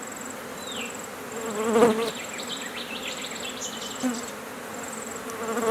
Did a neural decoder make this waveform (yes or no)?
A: no